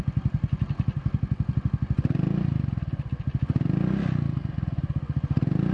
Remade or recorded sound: recorded